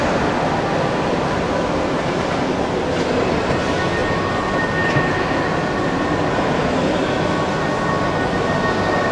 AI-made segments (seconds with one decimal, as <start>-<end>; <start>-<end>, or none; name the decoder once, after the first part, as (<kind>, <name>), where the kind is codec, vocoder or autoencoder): none